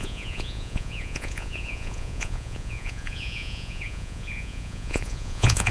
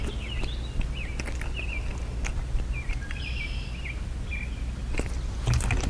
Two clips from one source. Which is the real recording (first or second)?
second